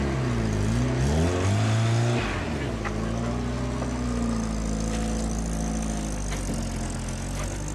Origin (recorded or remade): recorded